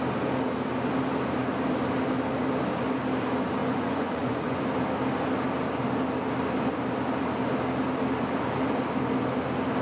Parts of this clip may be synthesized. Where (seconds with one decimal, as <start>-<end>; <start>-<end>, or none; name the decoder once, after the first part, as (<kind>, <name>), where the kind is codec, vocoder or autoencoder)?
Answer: 3.6-4.6 (vocoder, Vocos)